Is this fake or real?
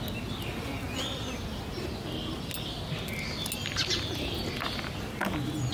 real